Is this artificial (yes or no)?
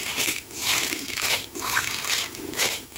yes